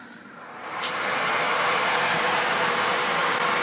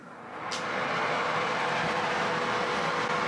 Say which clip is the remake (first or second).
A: first